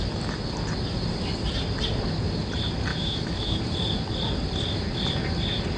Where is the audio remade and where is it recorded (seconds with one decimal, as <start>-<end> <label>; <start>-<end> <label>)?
0.0-2.9 recorded; 2.9-3.6 remade; 3.6-5.8 recorded